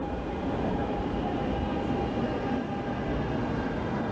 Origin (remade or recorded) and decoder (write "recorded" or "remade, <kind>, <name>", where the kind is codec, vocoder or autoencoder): recorded